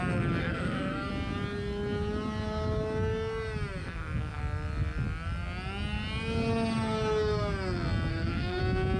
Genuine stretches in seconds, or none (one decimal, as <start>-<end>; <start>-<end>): 0.0-0.4; 1.1-3.8; 4.4-8.1; 8.6-9.0